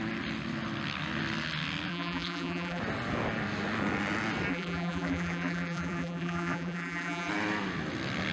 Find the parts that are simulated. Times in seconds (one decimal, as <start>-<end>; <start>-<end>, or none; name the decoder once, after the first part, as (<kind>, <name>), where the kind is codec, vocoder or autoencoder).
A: 1.9-2.8 (vocoder, BigVGAN v2); 4.5-7.3